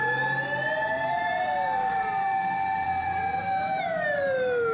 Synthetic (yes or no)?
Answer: yes